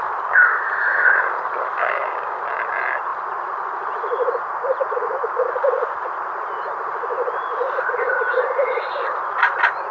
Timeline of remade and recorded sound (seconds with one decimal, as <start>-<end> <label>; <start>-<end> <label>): 0.0-1.8 recorded; 1.8-2.4 remade; 2.4-9.9 recorded